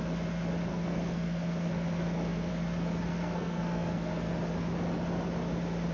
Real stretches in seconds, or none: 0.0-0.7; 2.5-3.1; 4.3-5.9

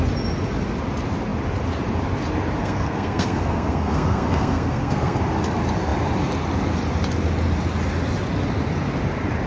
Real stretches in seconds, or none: 0.0-2.6; 5.2-9.5

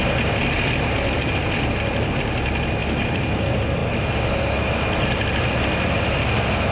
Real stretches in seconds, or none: 0.0-6.7

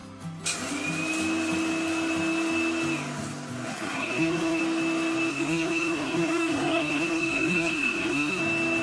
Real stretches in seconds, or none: 0.0-3.7; 4.6-5.3; 8.4-8.8

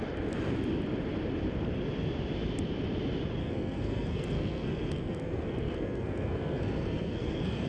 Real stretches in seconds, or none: 0.0-3.4

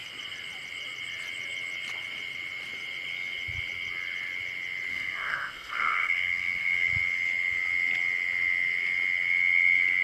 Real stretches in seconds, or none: 0.0-4.9; 6.9-10.0

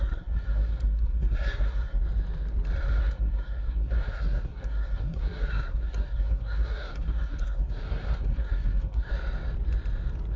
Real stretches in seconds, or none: 2.0-3.0; 9.1-10.4